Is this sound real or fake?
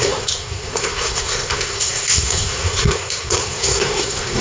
fake